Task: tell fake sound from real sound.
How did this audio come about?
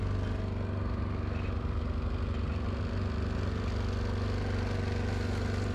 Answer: real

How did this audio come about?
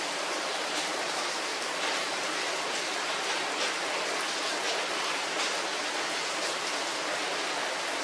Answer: real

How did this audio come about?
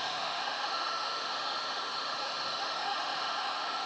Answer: fake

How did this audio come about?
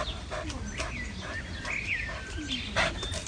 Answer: real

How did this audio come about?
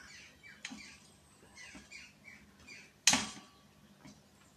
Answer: real